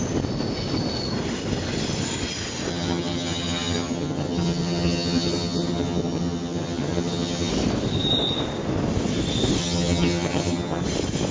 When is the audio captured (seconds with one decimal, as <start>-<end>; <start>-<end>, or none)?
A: 0.0-2.7; 7.5-9.6; 10.8-11.3